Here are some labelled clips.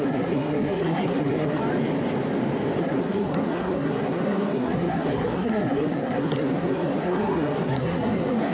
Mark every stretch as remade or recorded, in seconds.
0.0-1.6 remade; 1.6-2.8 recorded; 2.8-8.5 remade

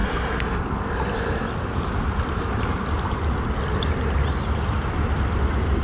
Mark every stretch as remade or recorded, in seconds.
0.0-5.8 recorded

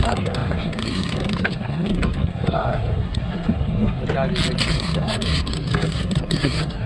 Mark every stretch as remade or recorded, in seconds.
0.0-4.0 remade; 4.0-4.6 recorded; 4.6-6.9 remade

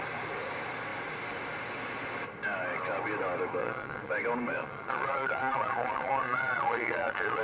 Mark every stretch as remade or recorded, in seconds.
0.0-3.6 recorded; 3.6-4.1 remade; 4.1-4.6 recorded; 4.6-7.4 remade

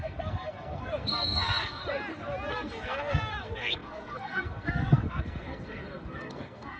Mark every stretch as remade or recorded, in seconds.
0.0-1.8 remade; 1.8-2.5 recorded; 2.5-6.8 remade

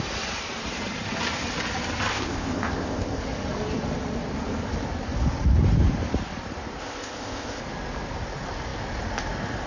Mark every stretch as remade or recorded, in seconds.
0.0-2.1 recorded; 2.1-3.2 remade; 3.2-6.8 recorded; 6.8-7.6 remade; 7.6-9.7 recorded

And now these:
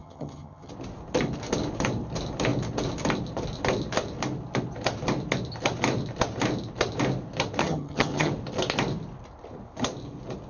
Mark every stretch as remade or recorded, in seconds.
0.0-0.7 remade; 0.7-7.6 recorded; 7.6-8.3 remade; 8.3-10.5 recorded

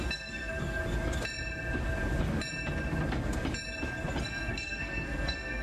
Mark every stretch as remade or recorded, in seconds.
0.0-0.8 remade; 0.8-4.2 recorded; 4.2-5.6 remade